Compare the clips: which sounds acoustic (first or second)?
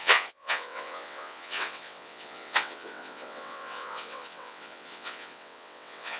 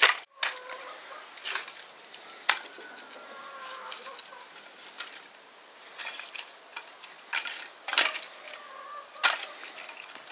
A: second